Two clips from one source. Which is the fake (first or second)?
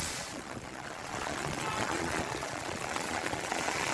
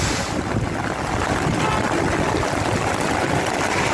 first